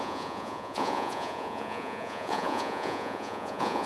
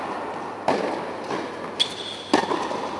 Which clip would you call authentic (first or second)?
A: second